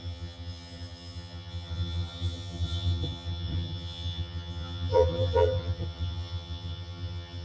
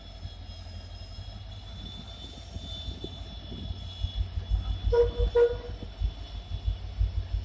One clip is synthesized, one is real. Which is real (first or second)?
second